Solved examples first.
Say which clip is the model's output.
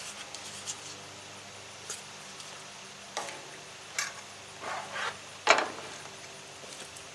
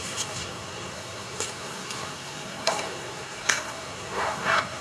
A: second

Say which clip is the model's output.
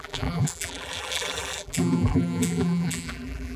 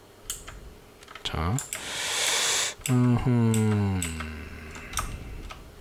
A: first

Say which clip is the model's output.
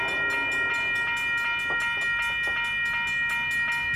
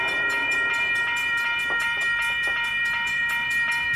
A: second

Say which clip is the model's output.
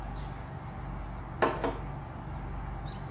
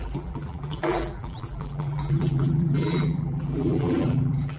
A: second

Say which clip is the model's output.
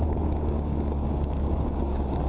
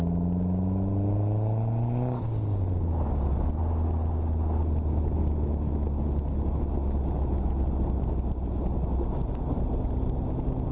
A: first